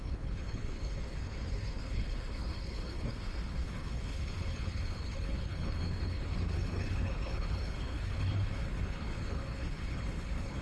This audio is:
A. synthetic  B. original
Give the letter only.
A